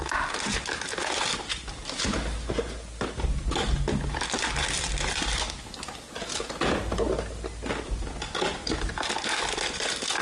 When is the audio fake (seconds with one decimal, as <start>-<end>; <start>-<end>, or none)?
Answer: 8.6-9.1